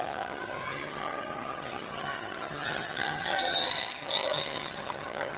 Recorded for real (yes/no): no